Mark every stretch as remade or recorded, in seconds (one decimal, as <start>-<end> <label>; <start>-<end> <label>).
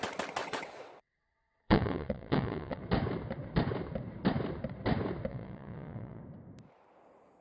0.0-0.4 recorded; 0.4-2.8 remade; 2.8-5.3 recorded; 5.3-6.2 remade; 6.2-7.4 recorded